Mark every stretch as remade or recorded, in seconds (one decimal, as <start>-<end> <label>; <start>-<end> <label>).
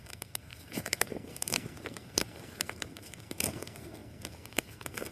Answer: 0.0-5.1 remade